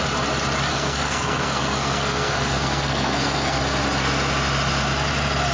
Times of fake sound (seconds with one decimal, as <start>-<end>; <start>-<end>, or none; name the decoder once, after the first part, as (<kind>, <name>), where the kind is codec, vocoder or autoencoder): 0.7-3.6 (codec, SNAC)